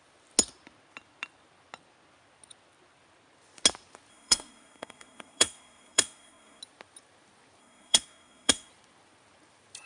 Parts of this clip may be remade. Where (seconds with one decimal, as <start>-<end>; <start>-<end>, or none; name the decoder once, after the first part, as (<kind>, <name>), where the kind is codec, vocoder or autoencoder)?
4.1-6.6 (codec, SNAC); 7.6-8.7